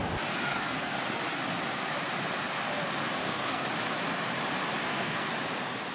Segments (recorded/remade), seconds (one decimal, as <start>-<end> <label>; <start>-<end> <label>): 0.0-0.5 recorded; 0.5-1.0 remade; 1.0-3.2 recorded; 3.2-3.7 remade; 3.7-4.8 recorded; 4.8-5.3 remade; 5.3-5.9 recorded